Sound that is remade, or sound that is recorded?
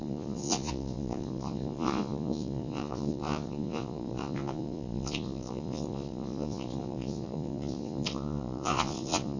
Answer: remade